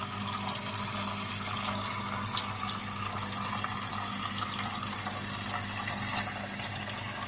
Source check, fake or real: real